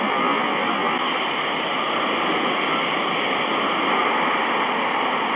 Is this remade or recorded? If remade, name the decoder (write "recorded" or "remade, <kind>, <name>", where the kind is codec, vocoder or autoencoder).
recorded